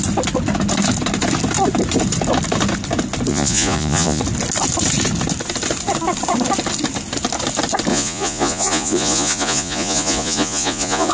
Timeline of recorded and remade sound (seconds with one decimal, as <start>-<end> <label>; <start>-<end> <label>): 0.0-3.3 recorded; 3.3-4.2 remade; 4.2-7.9 recorded; 7.9-11.1 remade